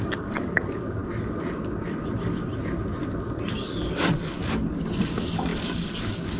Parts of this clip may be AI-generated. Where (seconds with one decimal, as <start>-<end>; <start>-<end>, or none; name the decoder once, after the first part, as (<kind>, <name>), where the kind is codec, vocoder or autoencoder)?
0.0-1.0 (codec, DAC); 3.5-4.4; 5.0-6.4